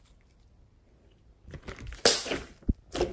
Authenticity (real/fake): real